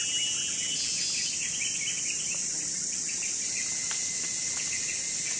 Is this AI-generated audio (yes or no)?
no